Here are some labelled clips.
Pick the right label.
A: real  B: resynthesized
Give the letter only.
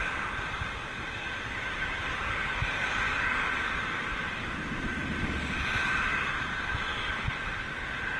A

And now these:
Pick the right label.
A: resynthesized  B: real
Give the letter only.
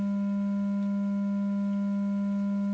B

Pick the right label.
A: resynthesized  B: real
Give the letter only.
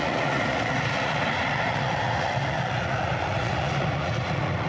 A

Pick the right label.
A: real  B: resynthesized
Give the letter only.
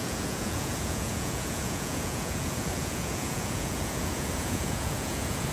B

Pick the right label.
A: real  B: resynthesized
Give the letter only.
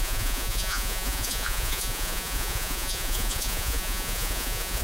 B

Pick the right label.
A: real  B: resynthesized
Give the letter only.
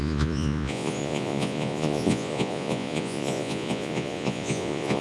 B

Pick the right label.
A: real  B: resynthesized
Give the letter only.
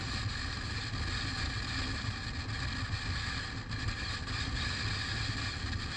A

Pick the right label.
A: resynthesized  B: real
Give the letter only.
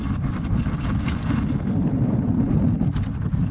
B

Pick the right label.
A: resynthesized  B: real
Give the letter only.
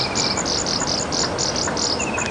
B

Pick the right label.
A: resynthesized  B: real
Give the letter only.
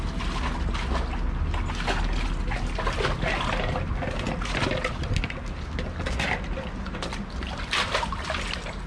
B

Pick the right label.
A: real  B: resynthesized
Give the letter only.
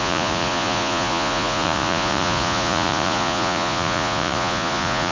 B